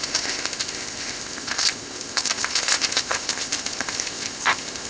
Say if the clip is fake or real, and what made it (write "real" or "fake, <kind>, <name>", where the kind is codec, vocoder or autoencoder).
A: fake, codec, ZipCodec